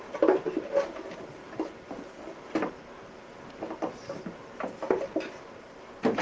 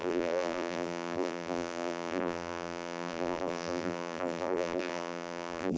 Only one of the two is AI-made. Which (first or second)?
second